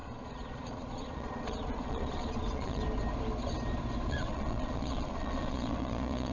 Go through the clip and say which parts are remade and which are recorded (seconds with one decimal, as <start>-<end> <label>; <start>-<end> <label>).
0.0-2.8 remade; 2.8-4.1 recorded; 4.1-6.3 remade